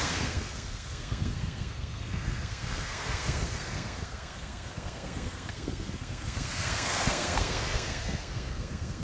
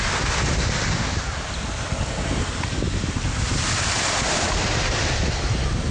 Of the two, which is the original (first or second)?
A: second